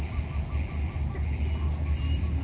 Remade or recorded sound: recorded